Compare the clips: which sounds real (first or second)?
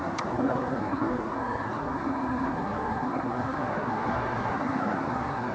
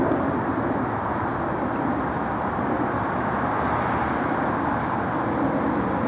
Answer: second